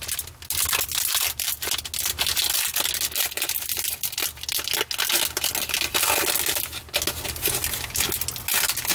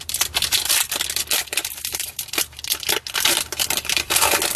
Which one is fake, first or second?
second